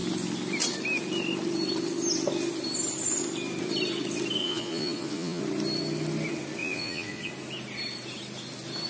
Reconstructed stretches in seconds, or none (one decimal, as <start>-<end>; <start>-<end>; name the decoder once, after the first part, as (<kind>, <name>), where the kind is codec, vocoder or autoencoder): 4.4-5.4 (vocoder, Vocos); 6.6-7.3